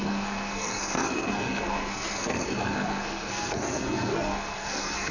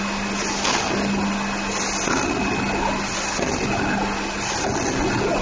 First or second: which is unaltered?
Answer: second